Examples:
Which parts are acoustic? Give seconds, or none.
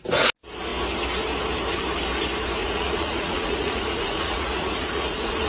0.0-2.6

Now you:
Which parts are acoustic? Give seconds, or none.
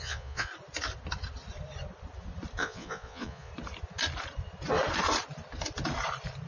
0.5-2.6; 3.5-6.5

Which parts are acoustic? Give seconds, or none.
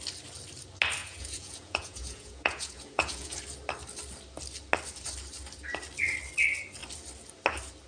0.0-1.0; 3.4-7.9